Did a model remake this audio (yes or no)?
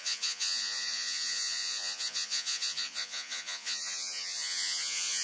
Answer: yes